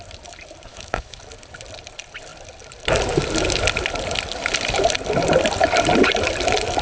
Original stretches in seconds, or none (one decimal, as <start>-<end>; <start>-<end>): 0.0-0.7; 1.2-6.8